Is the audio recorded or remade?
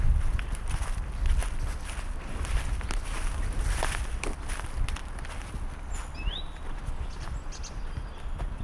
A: recorded